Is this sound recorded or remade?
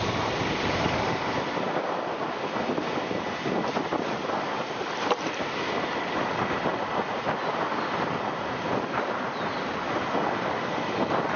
recorded